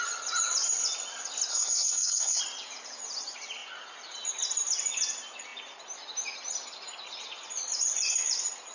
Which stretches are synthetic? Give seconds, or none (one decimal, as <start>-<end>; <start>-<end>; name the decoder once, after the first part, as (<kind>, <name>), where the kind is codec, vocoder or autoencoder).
1.5-2.4 (codec, SNAC)